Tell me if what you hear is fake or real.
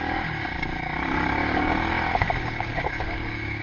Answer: fake